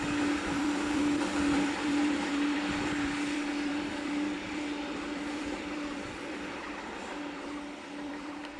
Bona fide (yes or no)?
no